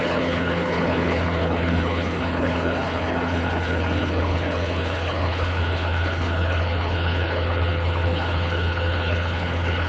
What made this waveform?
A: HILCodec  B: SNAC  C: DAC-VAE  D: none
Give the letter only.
A